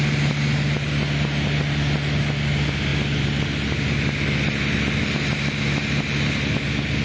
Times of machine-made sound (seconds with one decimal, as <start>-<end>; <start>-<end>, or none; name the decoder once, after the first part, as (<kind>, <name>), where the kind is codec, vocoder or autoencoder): none